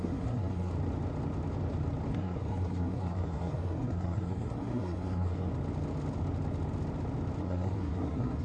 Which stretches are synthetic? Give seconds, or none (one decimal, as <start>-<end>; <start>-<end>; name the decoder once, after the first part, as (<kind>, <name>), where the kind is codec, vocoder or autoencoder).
0.0-0.7 (codec, SNAC); 2.1-5.5; 7.4-8.4